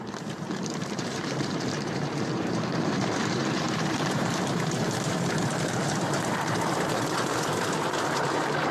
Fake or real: fake